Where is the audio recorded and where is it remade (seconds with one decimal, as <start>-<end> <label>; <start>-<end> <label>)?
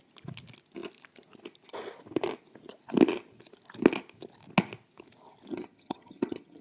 0.0-5.5 recorded; 5.5-6.6 remade